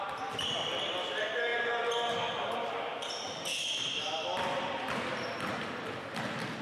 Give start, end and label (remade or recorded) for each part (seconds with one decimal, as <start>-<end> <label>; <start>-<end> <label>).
0.0-2.9 recorded; 2.9-5.5 remade; 5.5-6.6 recorded

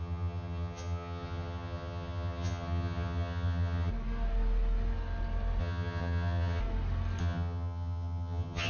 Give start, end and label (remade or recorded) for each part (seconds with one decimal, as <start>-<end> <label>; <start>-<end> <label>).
0.0-3.9 remade; 3.9-5.6 recorded; 5.6-6.6 remade; 6.6-7.2 recorded; 7.2-8.7 remade

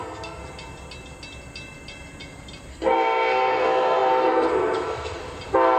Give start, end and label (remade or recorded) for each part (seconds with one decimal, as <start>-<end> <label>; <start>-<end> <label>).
0.0-0.4 remade; 0.4-2.7 recorded; 2.7-5.2 remade; 5.2-5.8 recorded

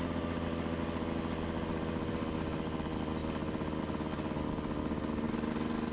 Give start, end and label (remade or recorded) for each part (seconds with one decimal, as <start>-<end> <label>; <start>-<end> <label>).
0.0-5.9 recorded

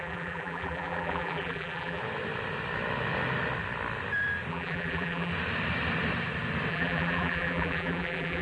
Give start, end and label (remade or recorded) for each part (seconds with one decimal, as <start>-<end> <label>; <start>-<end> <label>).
0.0-2.0 remade; 2.0-4.5 recorded; 4.5-5.3 remade; 5.3-6.7 recorded; 6.7-8.4 remade